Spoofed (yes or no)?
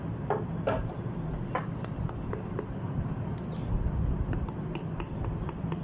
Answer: no